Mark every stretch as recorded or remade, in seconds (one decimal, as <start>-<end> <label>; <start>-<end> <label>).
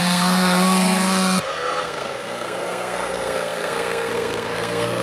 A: 0.0-5.0 remade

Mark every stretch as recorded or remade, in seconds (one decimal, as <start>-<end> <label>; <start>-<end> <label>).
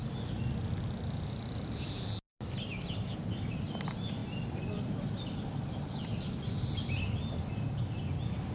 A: 0.0-8.5 recorded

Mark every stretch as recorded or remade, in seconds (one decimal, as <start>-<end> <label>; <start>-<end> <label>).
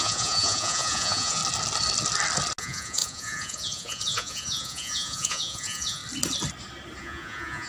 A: 0.0-1.4 remade; 1.4-2.6 recorded; 2.6-6.0 remade; 6.0-7.0 recorded; 7.0-7.7 remade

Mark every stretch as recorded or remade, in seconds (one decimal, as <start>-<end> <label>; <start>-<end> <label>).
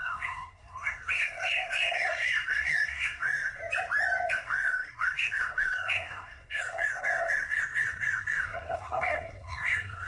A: 0.0-3.6 remade; 3.6-4.3 recorded; 4.3-10.1 remade